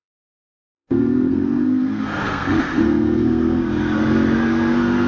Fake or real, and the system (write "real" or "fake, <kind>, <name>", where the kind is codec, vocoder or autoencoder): fake, codec, SNAC